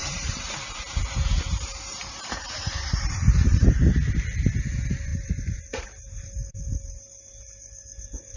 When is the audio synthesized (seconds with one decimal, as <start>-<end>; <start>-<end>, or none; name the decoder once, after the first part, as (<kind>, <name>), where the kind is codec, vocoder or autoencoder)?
0.0-3.8 (vocoder, BigVGAN v2); 5.1-6.2